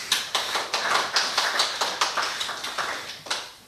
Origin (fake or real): fake